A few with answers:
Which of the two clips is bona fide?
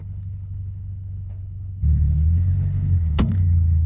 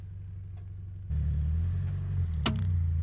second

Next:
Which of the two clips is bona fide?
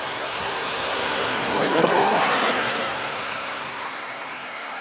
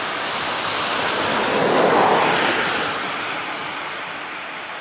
second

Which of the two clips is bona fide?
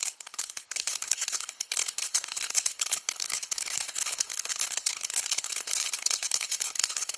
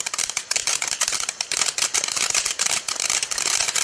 second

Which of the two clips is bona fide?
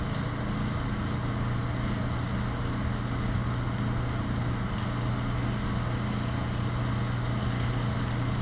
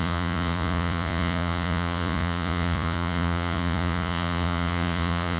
first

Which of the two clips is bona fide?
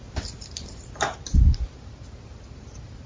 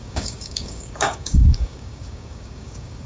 first